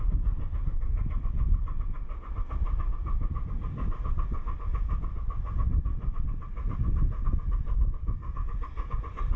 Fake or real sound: real